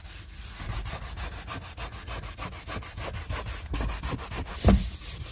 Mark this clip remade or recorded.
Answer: recorded